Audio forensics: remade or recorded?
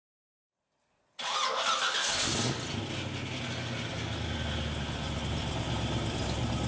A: recorded